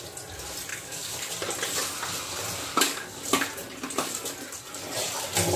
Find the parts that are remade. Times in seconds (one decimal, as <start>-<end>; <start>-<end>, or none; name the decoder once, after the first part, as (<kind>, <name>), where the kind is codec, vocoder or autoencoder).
0.7-1.3 (codec, DAC); 2.7-3.2

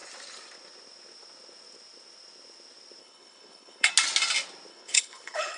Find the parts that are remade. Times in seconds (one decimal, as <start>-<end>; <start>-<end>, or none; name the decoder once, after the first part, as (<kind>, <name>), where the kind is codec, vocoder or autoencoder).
3.0-3.9 (codec, HILCodec); 4.7-5.6

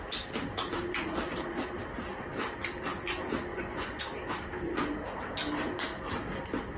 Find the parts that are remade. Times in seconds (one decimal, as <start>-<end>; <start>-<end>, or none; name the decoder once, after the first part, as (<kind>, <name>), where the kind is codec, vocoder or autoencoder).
3.5-4.0 (vocoder, Vocos)

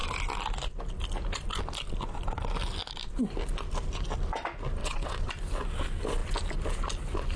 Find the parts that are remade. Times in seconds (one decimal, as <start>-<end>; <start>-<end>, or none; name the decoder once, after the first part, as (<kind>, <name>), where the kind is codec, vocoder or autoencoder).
4.8-5.3 (vocoder, WaveNeXt)

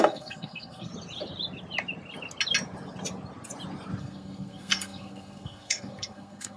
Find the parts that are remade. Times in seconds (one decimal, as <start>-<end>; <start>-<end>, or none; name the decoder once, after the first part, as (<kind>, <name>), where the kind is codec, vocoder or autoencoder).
0.0-0.9 (codec, SNAC); 4.0-6.6

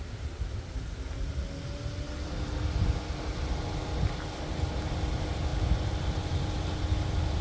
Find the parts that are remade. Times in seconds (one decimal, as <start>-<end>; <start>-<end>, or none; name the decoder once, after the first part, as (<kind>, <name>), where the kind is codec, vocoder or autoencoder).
none

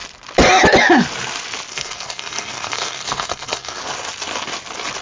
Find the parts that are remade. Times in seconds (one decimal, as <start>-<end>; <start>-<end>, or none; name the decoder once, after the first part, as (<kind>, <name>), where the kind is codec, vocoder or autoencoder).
1.7-3.8 (codec, SNAC)

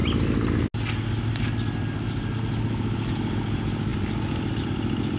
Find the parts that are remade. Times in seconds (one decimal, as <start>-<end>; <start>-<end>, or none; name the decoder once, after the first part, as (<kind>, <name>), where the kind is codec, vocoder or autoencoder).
3.9-4.7 (vocoder, BigVGAN v2)